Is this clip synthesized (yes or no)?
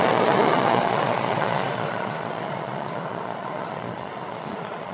yes